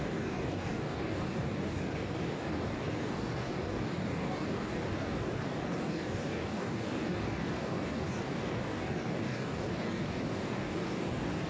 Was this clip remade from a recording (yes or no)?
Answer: yes